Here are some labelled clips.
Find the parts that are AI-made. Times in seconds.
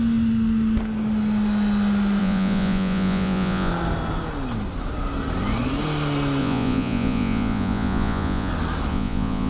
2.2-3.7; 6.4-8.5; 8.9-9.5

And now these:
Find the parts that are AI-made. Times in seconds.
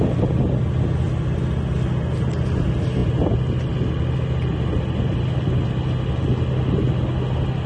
none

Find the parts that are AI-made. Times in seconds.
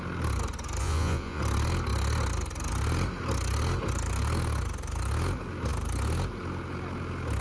0.8-1.4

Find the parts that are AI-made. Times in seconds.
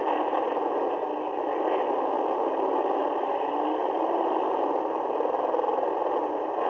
none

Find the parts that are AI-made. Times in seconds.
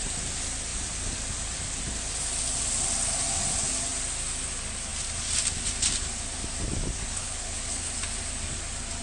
7.2-8.0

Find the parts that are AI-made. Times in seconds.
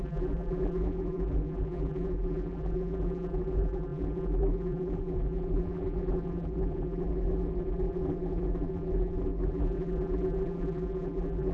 0.0-11.5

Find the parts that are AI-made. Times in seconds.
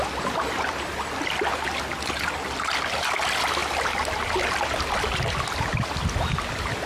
none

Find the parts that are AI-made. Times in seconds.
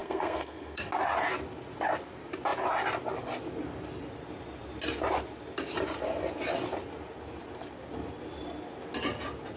0.0-0.9